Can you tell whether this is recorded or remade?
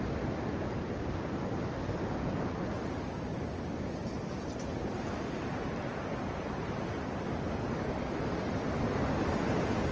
recorded